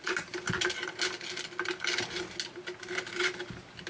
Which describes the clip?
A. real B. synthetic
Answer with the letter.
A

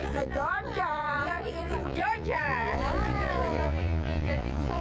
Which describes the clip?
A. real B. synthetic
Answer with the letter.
B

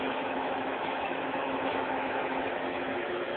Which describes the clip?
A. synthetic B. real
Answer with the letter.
A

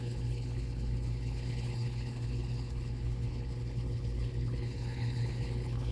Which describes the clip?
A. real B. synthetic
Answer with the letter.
B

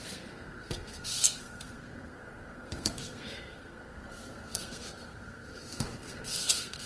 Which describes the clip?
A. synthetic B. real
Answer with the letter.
A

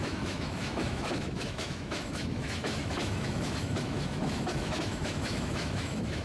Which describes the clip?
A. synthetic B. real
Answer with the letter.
A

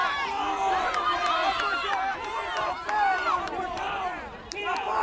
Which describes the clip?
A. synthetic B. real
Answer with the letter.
A